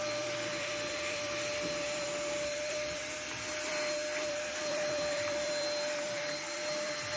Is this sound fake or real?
fake